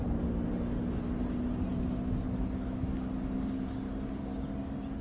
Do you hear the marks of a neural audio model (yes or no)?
no